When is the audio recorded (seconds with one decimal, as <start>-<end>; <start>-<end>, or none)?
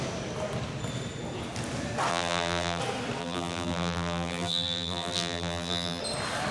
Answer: 0.0-2.1; 2.8-3.2; 6.0-6.5